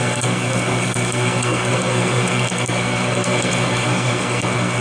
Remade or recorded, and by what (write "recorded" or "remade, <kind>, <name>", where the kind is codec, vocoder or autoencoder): remade, codec, SNAC